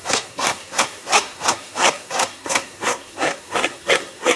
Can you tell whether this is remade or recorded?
remade